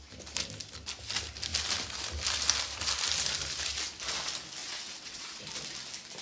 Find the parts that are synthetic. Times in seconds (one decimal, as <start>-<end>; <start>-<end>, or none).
4.6-5.4